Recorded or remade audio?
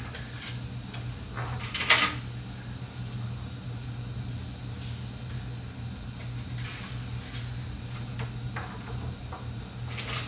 recorded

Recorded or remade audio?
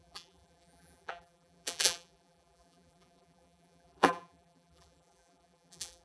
remade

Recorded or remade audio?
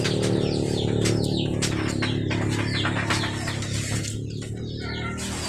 recorded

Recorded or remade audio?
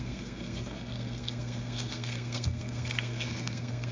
remade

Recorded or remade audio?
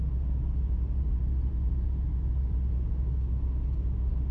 recorded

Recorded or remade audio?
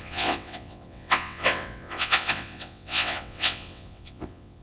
remade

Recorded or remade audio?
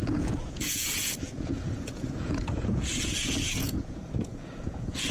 remade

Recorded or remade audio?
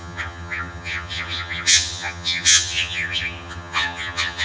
remade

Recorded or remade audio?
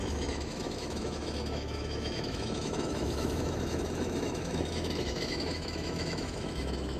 remade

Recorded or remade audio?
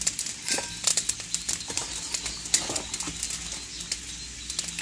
recorded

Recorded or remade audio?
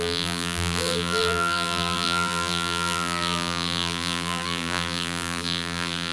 remade